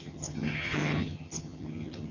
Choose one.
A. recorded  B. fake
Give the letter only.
B